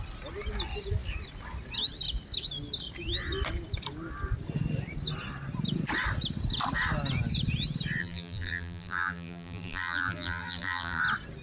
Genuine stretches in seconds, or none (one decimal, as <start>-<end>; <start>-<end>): 0.0-8.0; 11.0-11.4